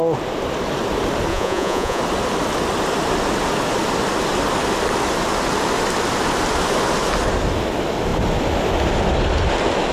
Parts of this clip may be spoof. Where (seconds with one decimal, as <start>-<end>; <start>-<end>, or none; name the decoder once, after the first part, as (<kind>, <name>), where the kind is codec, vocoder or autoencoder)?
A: 1.3-2.0 (vocoder, Vocos)